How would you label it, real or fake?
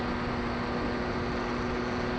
real